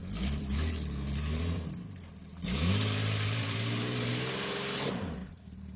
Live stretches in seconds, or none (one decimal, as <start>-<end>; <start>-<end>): 1.7-2.3; 4.1-5.2